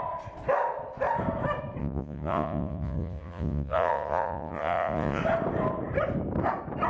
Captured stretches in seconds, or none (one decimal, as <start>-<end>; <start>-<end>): 0.0-1.8; 5.2-6.9